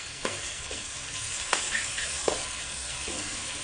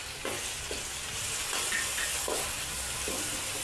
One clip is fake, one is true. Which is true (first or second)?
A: second